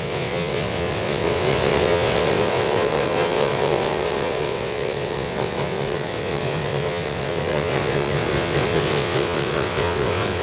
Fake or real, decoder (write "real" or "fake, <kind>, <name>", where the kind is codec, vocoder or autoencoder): fake, vocoder, WaveNeXt